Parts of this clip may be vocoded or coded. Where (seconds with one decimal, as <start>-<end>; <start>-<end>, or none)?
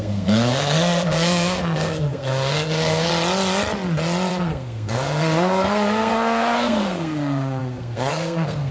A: 0.0-3.1; 4.3-8.7